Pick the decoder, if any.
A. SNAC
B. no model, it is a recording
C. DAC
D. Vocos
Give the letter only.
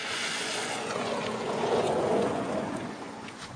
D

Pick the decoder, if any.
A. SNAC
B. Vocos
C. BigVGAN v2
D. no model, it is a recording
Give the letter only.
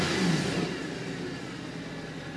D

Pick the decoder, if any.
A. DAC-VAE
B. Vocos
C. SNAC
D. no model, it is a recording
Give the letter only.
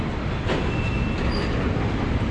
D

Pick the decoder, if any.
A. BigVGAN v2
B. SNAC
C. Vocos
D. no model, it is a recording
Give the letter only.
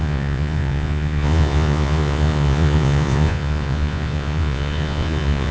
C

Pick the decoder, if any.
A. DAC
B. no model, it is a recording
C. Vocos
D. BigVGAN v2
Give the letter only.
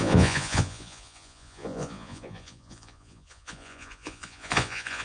C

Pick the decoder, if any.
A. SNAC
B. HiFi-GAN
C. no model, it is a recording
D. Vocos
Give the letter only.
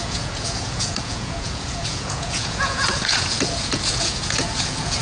D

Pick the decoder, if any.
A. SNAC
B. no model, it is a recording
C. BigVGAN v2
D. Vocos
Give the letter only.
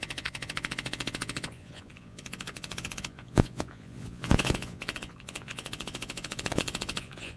D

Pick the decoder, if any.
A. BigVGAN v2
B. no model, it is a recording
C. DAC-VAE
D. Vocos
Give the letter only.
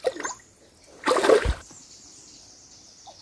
B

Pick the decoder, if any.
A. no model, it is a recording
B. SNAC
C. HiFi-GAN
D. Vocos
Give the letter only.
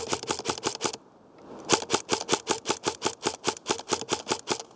A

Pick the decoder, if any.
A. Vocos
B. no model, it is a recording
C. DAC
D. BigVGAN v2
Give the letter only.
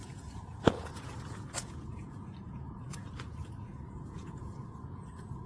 A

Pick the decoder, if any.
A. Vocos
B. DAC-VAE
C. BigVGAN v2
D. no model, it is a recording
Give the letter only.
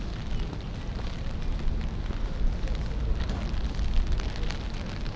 D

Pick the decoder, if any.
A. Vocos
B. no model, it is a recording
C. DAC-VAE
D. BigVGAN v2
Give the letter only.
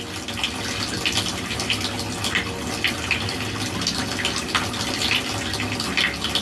B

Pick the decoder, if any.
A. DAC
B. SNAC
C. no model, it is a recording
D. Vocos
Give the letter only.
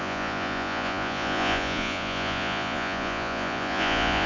D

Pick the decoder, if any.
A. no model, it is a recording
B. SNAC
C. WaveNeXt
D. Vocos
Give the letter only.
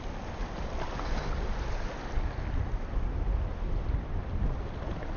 A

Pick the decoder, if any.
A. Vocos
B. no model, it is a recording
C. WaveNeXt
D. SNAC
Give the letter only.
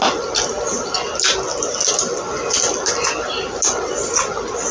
B